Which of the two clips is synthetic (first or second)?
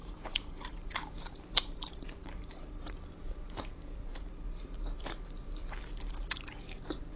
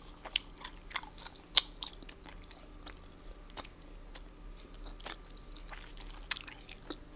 first